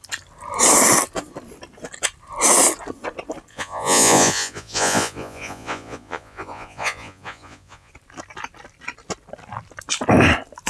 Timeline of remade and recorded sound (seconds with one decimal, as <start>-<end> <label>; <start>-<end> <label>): 0.0-3.5 recorded; 3.5-7.9 remade; 7.9-10.7 recorded